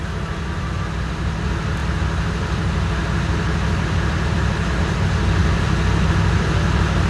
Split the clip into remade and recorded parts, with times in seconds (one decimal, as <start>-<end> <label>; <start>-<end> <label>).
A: 0.0-7.1 recorded